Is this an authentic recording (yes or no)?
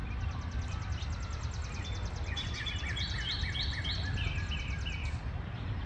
yes